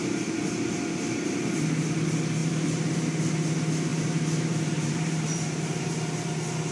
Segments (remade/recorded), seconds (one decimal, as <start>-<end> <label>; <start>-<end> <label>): 0.0-2.4 recorded; 2.4-3.3 remade; 3.3-3.9 recorded; 3.9-5.9 remade; 5.9-6.7 recorded